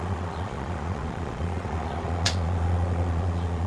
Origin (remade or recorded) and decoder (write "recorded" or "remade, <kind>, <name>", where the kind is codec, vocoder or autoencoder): remade, vocoder, Vocos